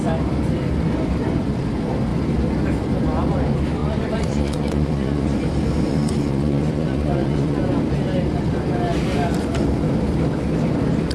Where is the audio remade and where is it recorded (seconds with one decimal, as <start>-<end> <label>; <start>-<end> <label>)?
0.0-3.8 recorded; 3.8-5.4 remade; 5.4-5.9 recorded; 5.9-7.6 remade; 7.6-11.1 recorded